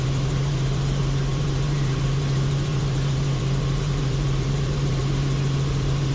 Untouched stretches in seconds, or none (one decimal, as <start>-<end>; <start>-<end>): none